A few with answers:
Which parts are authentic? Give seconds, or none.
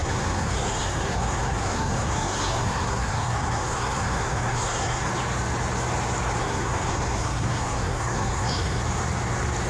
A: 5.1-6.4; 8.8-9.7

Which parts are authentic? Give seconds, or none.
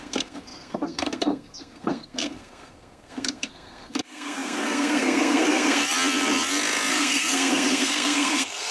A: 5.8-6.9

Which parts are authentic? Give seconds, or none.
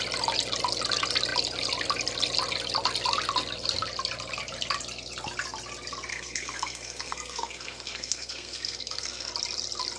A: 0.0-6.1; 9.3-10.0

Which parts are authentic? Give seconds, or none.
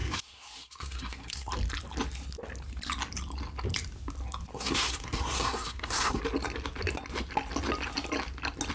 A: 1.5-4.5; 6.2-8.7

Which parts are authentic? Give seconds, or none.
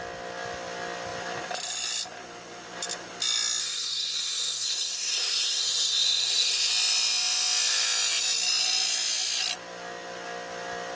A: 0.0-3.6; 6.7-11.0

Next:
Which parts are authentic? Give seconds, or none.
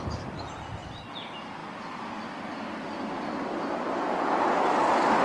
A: 0.0-5.2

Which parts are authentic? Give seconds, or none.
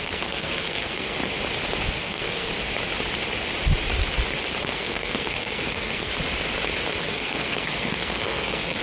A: 1.2-1.9; 2.5-4.6; 6.1-7.0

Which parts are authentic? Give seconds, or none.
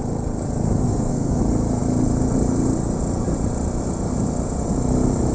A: 0.0-0.8; 1.4-5.3